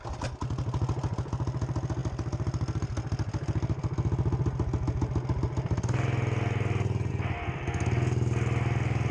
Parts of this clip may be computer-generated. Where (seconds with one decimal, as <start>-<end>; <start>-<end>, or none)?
none

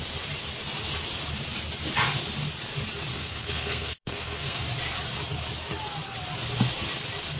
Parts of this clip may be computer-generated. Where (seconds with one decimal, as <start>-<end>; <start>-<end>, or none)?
3.1-4.6

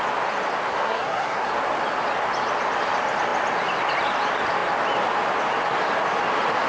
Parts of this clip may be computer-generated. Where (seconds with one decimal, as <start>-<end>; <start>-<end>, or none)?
0.7-1.5

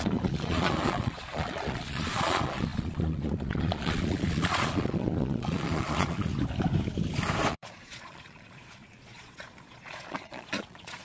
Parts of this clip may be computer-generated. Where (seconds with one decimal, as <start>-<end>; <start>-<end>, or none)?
0.0-6.3; 7.5-11.0